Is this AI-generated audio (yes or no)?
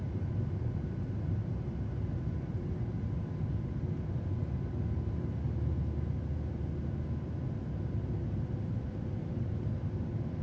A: no